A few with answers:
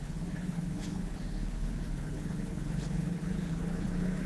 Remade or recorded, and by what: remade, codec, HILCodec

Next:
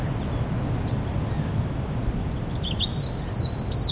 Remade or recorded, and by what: recorded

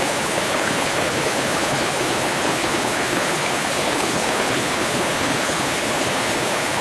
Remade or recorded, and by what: remade, codec, HILCodec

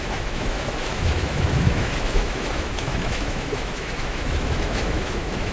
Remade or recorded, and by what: remade, autoencoder, DAC-VAE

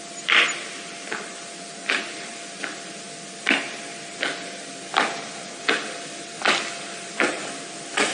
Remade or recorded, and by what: recorded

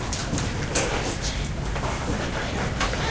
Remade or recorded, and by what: recorded